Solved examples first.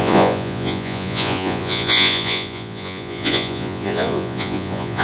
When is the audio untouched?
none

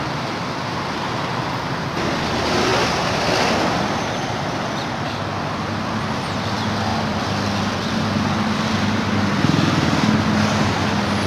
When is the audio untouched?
0.0-11.3

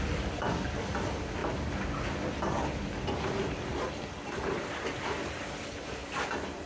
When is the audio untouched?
0.0-6.7

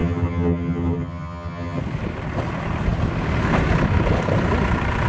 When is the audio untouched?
1.8-5.1

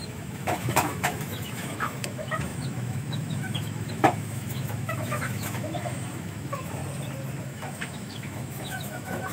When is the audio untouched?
6.8-7.4

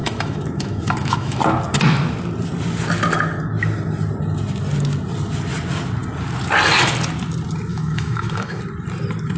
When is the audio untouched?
1.4-7.7; 8.6-9.4

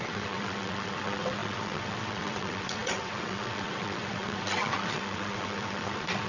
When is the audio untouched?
none

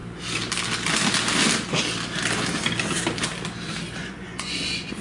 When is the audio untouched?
0.0-4.0